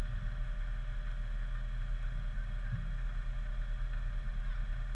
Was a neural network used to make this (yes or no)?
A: no